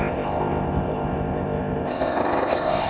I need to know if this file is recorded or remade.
remade